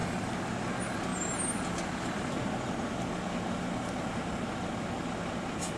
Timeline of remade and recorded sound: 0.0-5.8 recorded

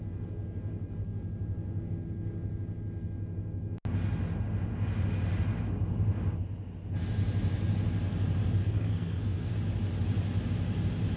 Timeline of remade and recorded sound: 0.0-8.6 recorded; 8.6-9.5 remade; 9.5-11.2 recorded

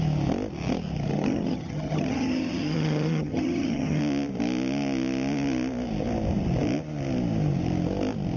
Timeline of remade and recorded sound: 0.0-1.1 recorded; 1.1-4.0 remade; 4.0-8.4 recorded

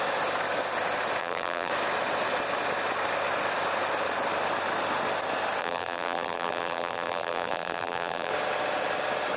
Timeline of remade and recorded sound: 0.0-1.2 recorded; 1.2-1.7 remade; 1.7-5.6 recorded; 5.6-8.3 remade; 8.3-9.4 recorded

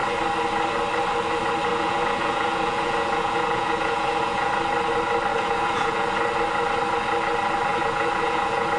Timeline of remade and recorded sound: 0.0-1.7 recorded; 1.7-4.5 remade; 4.5-5.3 recorded; 5.3-6.1 remade; 6.1-7.7 recorded; 7.7-8.8 remade